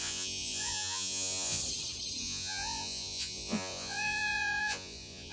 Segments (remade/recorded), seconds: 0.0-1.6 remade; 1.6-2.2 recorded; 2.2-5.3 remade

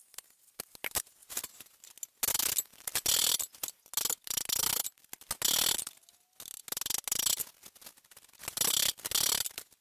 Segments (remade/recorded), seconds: 0.0-9.8 recorded

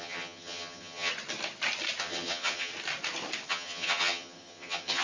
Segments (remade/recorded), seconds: 0.0-1.1 remade; 1.1-2.0 recorded; 2.0-2.7 remade; 2.7-3.5 recorded; 3.5-5.0 remade

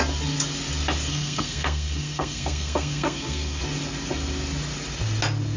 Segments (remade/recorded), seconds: 0.0-1.1 recorded; 1.1-3.6 remade; 3.6-5.6 recorded

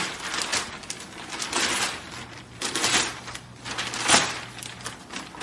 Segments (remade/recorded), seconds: 0.0-0.5 recorded; 0.5-3.2 remade; 3.2-5.4 recorded